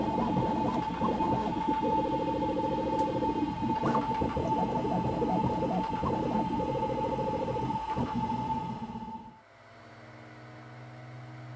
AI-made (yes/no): no